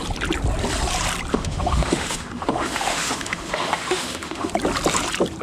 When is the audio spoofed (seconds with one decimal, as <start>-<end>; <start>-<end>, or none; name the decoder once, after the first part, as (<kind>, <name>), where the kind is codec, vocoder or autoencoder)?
1.3-4.5 (autoencoder, DAC-VAE)